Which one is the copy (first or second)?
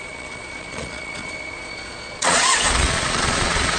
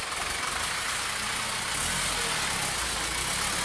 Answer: first